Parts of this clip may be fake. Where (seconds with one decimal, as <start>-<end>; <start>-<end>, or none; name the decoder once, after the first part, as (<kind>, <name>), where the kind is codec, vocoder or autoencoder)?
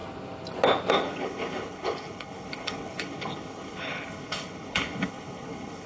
0.9-5.9 (codec, HILCodec)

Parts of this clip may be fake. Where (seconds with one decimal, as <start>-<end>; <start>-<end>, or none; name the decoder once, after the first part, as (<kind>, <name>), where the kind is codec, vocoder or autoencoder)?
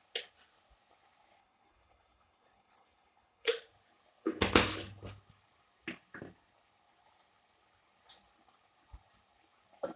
1.4-3.5 (codec, HILCodec)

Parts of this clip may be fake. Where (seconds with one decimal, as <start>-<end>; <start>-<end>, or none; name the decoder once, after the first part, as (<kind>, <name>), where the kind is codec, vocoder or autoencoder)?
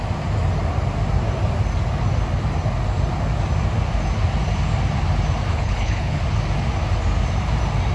5.5-6.2 (codec, HILCodec)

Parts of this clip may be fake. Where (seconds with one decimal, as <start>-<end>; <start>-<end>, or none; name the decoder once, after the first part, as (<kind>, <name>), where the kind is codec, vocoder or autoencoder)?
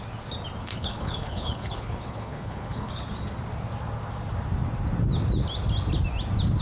0.6-2.9 (codec, HILCodec)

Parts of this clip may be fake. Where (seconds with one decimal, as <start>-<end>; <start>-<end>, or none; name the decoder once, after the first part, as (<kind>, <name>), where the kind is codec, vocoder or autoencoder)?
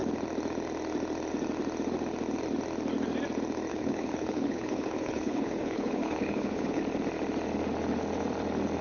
3.7-6.8 (codec, HILCodec)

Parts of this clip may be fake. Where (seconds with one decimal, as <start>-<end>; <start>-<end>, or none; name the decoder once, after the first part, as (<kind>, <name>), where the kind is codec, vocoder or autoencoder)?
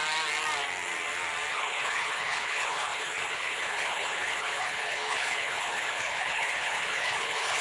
1.5-7.6 (codec, HILCodec)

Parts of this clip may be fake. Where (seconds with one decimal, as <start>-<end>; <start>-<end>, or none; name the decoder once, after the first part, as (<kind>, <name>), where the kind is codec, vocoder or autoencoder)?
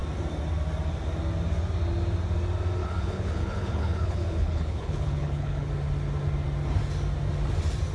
2.8-5.7 (codec, HILCodec)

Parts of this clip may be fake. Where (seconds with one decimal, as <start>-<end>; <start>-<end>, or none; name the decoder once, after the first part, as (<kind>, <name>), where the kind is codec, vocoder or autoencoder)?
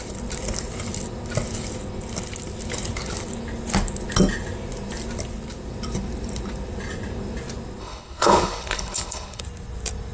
7.8-9.4 (codec, HILCodec)